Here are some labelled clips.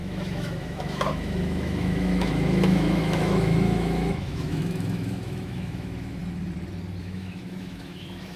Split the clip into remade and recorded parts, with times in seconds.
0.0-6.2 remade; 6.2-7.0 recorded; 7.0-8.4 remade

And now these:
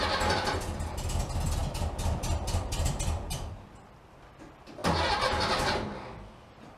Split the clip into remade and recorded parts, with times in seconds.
0.0-6.8 recorded

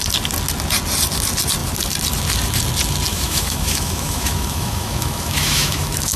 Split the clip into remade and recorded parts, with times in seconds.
0.0-3.1 recorded; 3.1-6.2 remade